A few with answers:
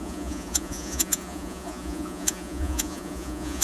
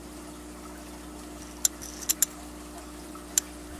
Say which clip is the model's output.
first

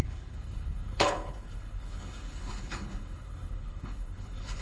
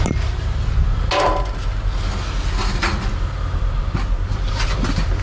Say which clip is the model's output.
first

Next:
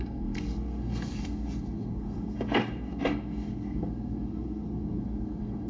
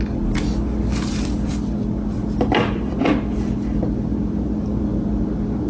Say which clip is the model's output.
first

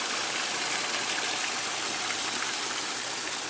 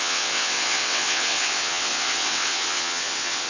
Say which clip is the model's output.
second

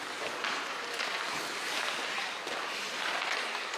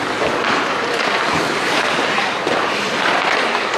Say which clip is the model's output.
second